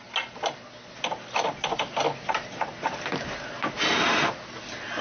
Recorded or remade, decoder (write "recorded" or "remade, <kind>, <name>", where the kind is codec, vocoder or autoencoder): recorded